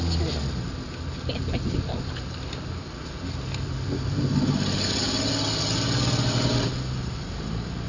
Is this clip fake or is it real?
real